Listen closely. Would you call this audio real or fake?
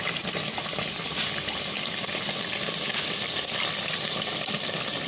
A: real